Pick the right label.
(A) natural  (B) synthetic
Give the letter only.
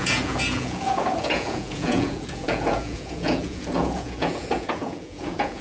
B